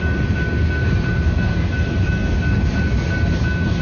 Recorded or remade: recorded